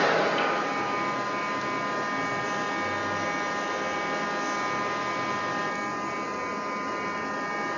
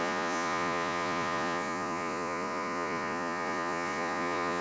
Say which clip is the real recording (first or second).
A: first